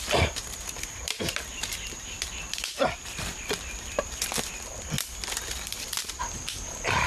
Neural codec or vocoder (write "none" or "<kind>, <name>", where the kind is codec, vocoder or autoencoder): vocoder, BigVGAN v2